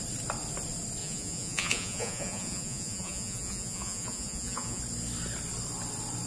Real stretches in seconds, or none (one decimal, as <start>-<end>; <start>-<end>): 0.0-1.0; 4.8-6.3